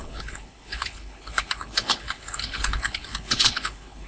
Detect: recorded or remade remade